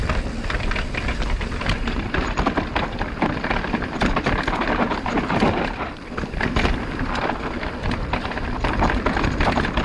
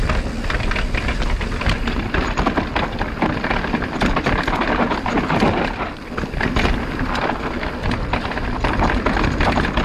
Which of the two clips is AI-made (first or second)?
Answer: first